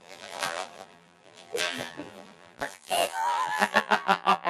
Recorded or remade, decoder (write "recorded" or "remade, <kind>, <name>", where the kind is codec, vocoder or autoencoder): remade, vocoder, BigVGAN v2